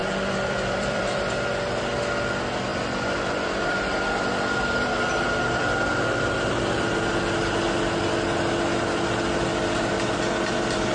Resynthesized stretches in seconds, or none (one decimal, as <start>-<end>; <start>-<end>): 0.0-1.2; 2.7-6.2; 9.5-10.2